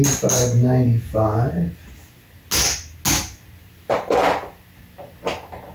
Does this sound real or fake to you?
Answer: real